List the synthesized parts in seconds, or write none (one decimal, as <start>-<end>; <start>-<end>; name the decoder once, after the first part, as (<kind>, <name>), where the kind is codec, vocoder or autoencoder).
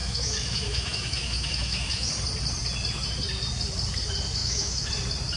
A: 0.0-2.1 (autoencoder, DAC-VAE); 4.4-4.9